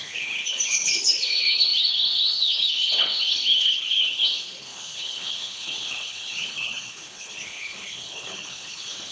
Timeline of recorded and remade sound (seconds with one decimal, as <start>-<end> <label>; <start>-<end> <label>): 0.0-9.1 remade